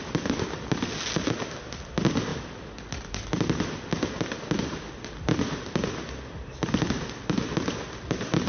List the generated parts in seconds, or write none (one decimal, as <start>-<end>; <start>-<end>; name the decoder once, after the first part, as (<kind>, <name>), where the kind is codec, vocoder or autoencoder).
none